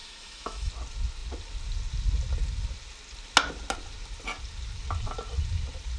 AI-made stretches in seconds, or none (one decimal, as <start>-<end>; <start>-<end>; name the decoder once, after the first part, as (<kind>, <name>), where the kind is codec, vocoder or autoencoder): 0.0-0.7 (autoencoder, DAC-VAE)